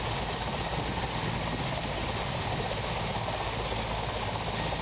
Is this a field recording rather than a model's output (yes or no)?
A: yes